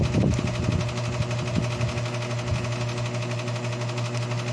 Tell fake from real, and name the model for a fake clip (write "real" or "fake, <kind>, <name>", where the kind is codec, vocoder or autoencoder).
real